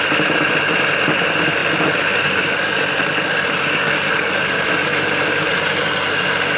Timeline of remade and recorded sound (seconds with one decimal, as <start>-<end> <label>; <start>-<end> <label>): 0.0-1.6 recorded; 1.6-4.1 remade; 4.1-6.6 recorded